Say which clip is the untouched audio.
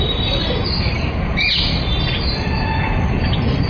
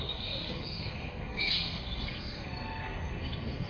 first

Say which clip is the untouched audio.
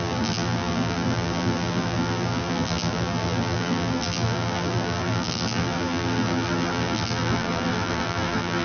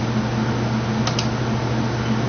second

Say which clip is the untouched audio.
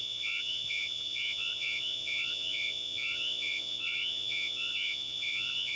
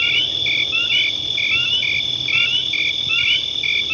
second